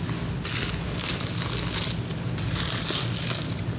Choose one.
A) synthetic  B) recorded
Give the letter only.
B